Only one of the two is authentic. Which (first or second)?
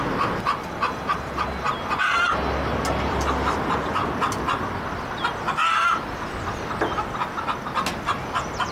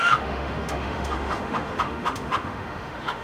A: first